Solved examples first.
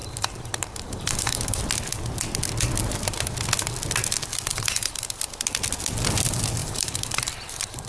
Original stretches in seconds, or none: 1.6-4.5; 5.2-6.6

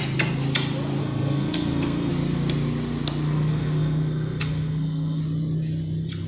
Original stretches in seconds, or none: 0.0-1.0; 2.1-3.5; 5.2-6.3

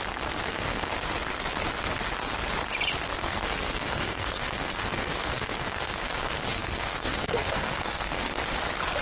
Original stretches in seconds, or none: 0.0-0.4; 0.9-3.2; 8.4-9.0